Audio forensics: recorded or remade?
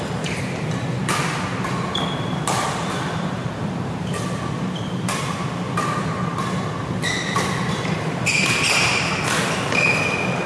remade